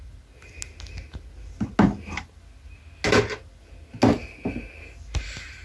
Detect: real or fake real